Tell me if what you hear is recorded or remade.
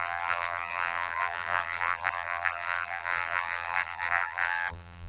remade